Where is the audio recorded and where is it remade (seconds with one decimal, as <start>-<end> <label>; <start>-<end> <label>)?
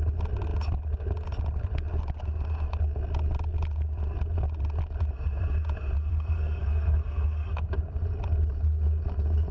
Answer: 0.0-6.1 recorded; 6.1-7.5 remade; 7.5-9.5 recorded